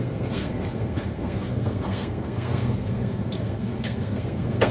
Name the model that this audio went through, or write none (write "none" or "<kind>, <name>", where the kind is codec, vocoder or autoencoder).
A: codec, SNAC